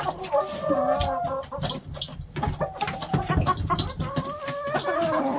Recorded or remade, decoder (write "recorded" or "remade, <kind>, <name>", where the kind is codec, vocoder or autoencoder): recorded